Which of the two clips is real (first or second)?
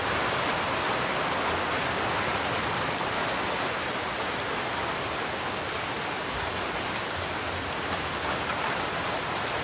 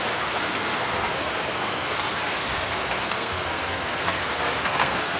first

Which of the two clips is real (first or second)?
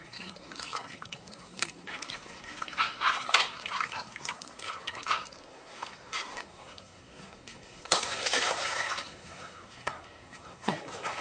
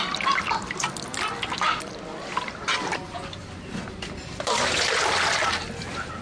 second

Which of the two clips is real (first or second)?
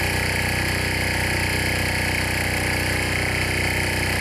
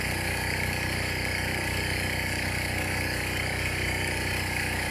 first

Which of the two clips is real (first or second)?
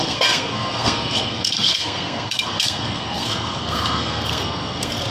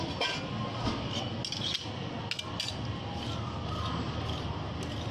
second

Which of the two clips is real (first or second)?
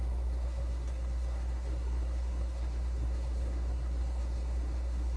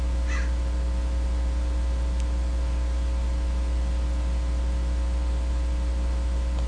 second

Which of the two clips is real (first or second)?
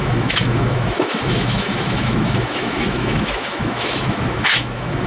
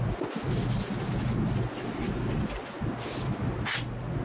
second